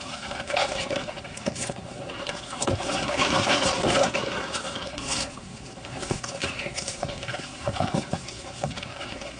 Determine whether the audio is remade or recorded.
remade